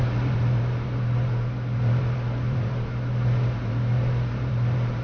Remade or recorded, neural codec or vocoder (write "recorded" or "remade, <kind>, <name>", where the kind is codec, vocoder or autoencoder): remade, vocoder, BigVGAN v2